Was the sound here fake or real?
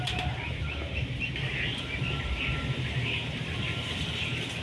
real